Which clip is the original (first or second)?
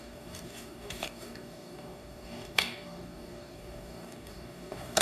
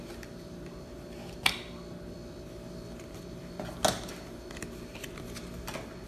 second